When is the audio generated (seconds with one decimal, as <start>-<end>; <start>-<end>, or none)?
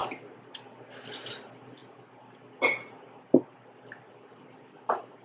1.3-1.8; 4.1-5.2